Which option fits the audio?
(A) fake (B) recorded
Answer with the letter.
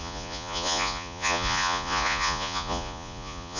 A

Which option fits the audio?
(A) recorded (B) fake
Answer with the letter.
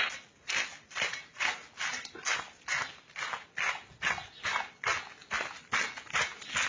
A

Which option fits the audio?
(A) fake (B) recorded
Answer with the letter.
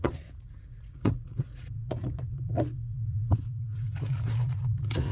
A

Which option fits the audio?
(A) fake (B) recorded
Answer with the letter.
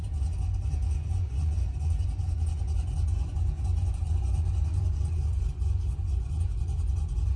A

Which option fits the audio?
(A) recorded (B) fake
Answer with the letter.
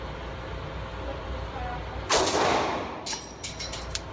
A